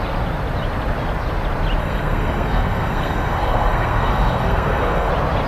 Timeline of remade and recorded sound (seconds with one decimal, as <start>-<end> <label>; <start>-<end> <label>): 0.0-1.8 recorded; 1.8-5.1 remade; 5.1-5.5 recorded